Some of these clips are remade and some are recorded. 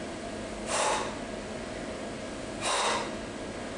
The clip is recorded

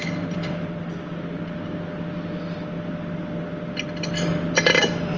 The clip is recorded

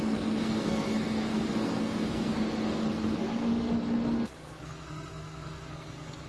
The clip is remade